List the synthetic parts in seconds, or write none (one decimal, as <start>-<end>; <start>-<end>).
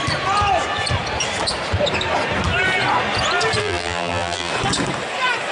3.6-4.5